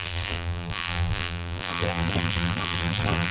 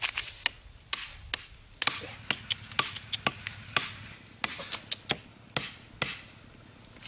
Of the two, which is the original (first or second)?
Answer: second